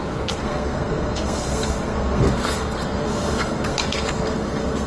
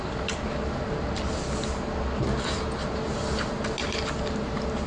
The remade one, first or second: first